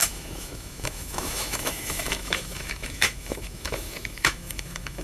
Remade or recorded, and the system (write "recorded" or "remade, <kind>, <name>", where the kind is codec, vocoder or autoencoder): remade, autoencoder, DAC-VAE